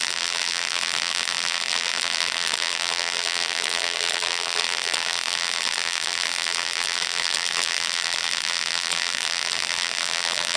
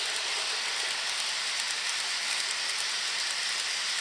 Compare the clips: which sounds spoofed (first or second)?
first